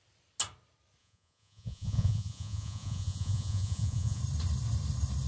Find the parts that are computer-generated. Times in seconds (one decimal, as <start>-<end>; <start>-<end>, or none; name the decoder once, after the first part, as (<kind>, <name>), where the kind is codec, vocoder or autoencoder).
1.0-4.2 (vocoder, Vocos)